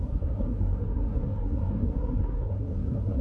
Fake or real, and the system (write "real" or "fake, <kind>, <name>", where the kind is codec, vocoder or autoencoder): fake, codec, SNAC